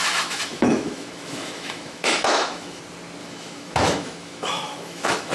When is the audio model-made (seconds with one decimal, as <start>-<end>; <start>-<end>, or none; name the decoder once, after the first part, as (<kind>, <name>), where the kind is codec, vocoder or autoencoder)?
0.0-2.8 (autoencoder, DAC-VAE); 3.2-5.3